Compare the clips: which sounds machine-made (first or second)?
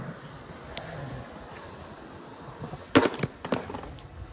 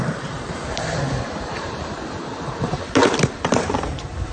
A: second